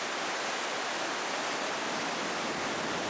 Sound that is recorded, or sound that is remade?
recorded